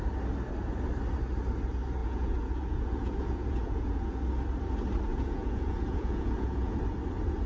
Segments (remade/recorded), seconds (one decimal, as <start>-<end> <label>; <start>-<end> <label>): 0.0-2.0 recorded; 2.0-4.2 remade; 4.2-5.1 recorded; 5.1-6.8 remade; 6.8-7.5 recorded